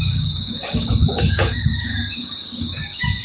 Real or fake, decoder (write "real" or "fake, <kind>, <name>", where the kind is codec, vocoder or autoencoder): fake, codec, DAC